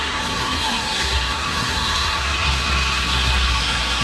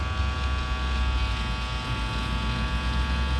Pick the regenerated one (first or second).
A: first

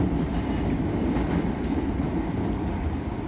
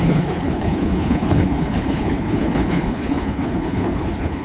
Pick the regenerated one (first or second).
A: second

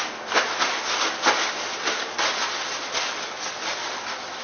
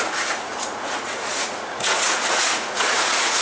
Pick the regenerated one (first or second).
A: second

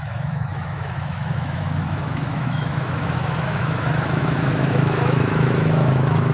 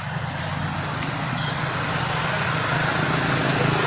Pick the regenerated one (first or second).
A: first